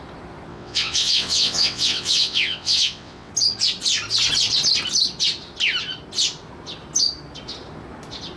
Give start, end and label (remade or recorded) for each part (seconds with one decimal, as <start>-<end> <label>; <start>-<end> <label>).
0.0-0.5 recorded; 0.5-3.3 remade; 3.3-8.4 recorded